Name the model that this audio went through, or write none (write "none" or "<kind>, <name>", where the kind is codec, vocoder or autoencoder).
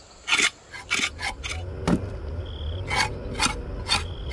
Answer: none